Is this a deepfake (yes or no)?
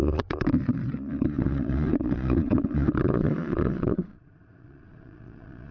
yes